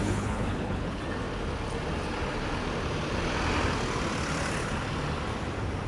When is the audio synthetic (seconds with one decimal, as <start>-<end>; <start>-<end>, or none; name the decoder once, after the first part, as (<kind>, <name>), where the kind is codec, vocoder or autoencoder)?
0.0-1.0 (codec, HILCodec)